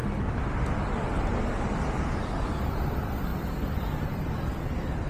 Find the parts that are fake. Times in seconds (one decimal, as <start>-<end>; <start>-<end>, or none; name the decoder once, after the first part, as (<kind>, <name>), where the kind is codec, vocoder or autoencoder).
none